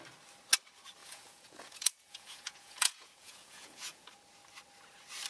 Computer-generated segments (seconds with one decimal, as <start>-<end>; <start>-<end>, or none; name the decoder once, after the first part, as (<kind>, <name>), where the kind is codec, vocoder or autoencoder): 1.0-4.1 (vocoder, Vocos)